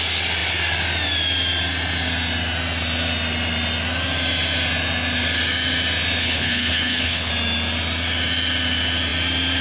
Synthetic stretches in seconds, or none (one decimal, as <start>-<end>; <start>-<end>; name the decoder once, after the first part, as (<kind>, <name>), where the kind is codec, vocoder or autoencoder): 6.2-7.3 (codec, HILCodec)